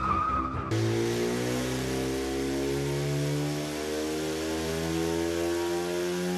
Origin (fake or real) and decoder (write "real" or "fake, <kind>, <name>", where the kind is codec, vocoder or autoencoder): real